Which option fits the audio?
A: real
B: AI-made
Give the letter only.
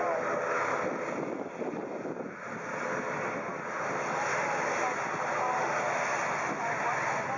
A